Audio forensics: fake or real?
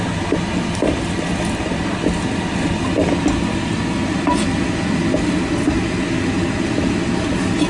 real